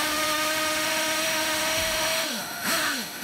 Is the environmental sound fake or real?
fake